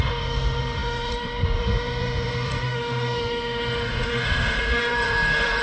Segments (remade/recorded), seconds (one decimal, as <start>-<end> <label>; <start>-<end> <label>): 0.0-5.6 remade